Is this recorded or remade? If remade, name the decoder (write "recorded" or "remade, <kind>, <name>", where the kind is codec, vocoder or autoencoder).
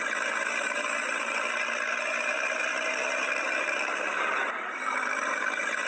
recorded